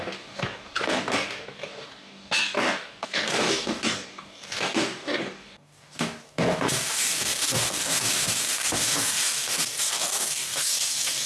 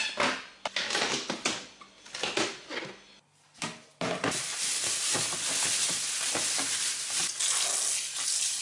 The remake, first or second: first